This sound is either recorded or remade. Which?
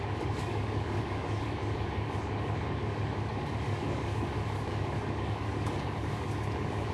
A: remade